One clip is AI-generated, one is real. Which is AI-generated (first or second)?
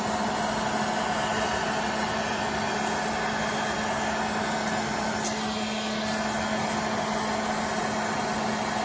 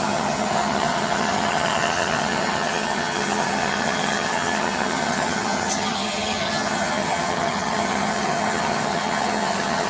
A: second